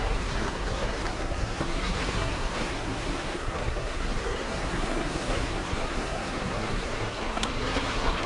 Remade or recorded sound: remade